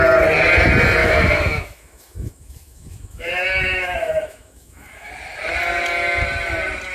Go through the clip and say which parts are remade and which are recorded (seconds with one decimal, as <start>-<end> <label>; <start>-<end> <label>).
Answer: 0.0-1.0 recorded; 1.0-5.1 remade; 5.1-6.9 recorded